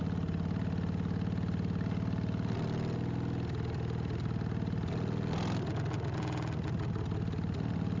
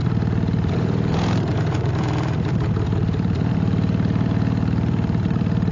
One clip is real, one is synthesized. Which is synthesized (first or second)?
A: second